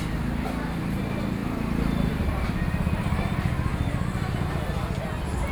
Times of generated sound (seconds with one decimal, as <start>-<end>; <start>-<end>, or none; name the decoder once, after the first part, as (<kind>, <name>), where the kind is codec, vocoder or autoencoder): 1.4-2.1 (vocoder, BigVGAN v2); 3.7-4.3